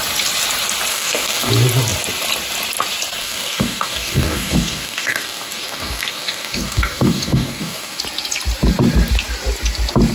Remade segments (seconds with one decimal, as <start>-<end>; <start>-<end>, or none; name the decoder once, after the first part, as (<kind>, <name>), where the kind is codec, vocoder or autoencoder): 0.9-1.5 (codec, DAC); 3.2-8.0